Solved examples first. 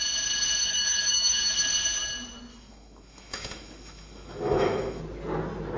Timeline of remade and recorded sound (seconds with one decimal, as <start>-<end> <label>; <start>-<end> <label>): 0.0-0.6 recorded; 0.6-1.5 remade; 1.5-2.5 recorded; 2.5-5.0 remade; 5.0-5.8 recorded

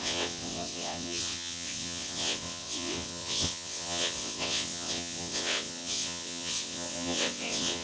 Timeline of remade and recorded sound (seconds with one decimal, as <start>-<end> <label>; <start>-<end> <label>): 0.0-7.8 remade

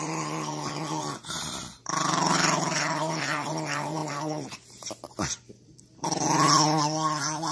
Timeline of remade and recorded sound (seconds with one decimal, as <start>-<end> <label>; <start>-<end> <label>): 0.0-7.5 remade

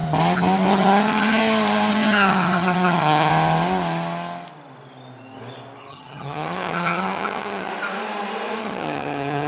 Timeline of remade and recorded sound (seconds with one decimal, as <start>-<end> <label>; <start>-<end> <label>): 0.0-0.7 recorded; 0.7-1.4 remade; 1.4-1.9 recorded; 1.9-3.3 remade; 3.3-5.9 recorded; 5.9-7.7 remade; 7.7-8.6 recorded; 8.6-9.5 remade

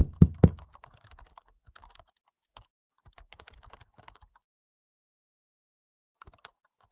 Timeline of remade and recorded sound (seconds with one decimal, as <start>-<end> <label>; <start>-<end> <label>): 0.0-6.9 remade